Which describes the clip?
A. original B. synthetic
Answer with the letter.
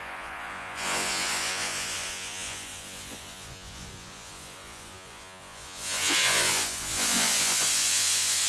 B